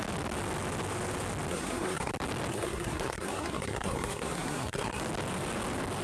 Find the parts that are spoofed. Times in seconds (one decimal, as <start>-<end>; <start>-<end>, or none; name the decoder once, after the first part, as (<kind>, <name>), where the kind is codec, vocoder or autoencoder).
1.5-2.1 (codec, SNAC); 2.5-5.0